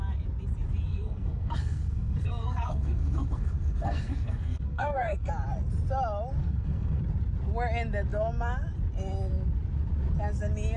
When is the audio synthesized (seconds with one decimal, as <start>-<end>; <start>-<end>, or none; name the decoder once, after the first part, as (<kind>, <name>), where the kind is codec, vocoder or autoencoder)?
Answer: 0.9-5.3 (codec, SNAC); 6.4-7.0